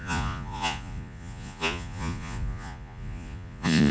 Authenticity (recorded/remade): remade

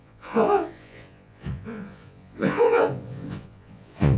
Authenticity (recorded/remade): remade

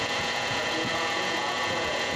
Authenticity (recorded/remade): remade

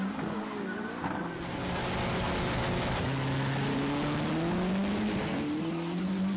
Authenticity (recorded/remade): recorded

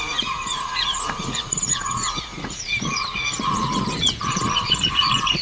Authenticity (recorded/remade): remade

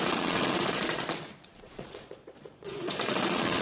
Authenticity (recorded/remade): remade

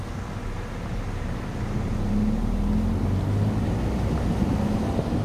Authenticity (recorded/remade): recorded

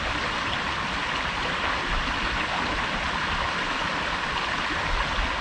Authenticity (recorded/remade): recorded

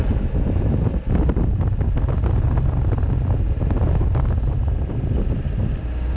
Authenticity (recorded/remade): recorded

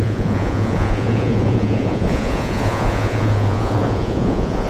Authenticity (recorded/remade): remade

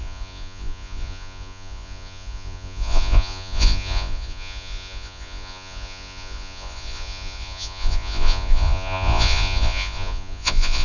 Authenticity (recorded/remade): remade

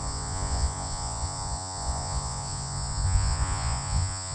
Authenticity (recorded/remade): remade